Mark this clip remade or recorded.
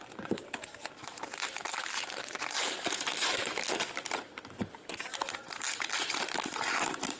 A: remade